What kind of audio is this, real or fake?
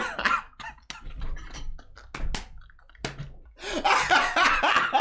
real